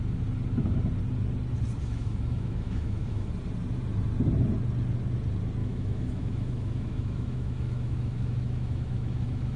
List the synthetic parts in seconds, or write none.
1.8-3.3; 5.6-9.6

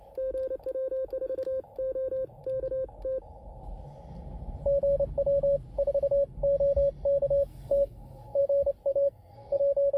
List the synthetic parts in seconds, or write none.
7.5-8.4; 8.9-9.6